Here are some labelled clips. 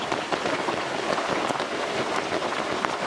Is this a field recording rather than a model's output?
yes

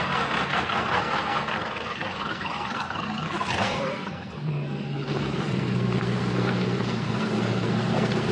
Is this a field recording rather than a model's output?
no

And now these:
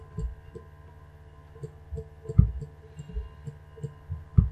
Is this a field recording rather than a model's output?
yes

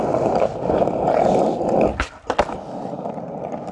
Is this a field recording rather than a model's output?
yes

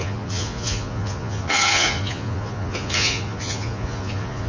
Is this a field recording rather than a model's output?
no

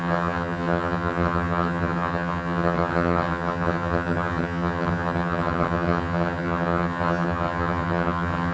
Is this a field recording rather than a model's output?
no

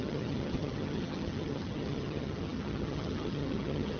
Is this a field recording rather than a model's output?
no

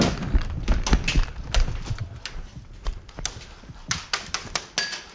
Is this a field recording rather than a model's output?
yes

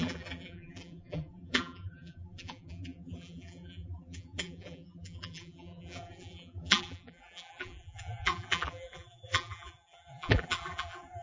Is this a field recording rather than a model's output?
no